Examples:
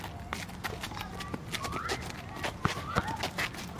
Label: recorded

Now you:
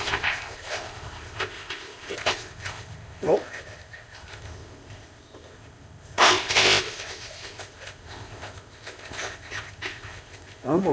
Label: remade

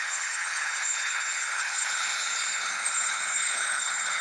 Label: remade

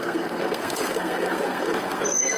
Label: remade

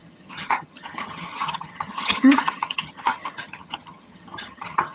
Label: remade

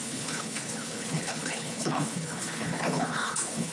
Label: remade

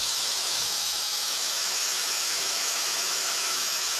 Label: remade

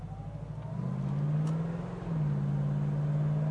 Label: recorded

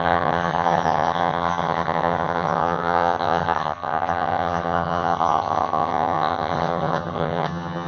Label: remade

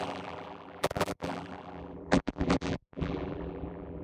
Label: remade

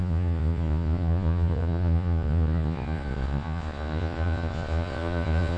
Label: remade